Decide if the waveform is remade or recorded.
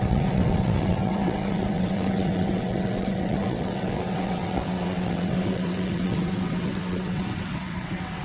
remade